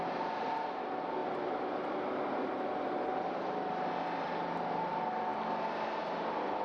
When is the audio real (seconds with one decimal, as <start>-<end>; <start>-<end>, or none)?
0.0-6.6